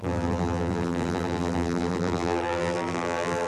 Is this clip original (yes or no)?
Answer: no